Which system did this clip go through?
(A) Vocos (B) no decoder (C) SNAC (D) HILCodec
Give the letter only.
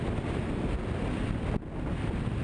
B